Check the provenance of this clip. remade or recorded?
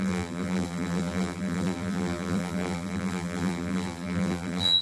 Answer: remade